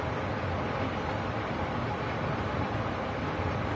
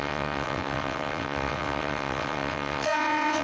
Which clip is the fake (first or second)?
second